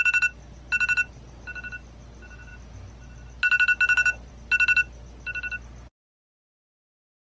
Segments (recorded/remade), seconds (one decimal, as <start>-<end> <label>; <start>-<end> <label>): 0.0-7.3 recorded